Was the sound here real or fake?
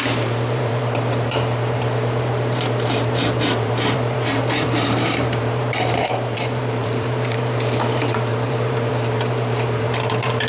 fake